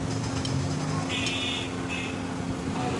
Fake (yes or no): no